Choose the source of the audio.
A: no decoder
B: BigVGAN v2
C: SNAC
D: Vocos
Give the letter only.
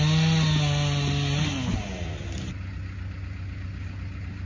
A